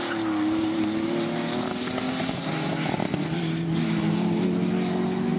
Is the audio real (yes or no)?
yes